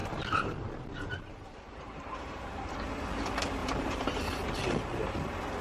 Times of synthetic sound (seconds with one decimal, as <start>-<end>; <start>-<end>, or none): 0.0-2.7; 3.6-4.2